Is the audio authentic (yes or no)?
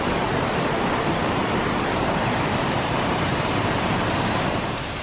no